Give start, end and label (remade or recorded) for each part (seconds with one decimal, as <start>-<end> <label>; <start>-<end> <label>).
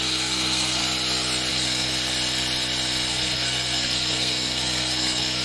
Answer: 0.0-0.8 remade; 0.8-1.5 recorded; 1.5-1.9 remade; 1.9-3.1 recorded; 3.1-5.4 remade